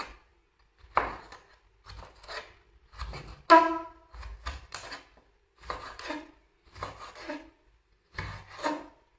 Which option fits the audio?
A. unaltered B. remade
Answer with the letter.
A